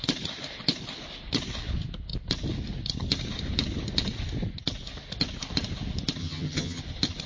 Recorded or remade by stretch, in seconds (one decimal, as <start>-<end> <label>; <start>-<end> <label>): 0.0-6.2 recorded; 6.2-6.8 remade; 6.8-7.3 recorded